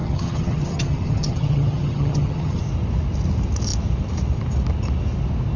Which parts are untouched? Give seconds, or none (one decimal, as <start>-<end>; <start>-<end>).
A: 2.6-5.6